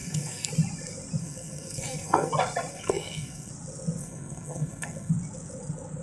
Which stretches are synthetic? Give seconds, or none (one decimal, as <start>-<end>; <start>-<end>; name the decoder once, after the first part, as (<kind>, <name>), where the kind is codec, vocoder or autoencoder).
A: 0.0-0.5 (codec, SNAC); 1.2-2.3; 2.7-3.5; 4.0-5.1